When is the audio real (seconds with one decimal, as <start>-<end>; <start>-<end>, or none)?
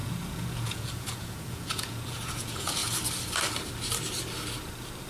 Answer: 2.8-5.1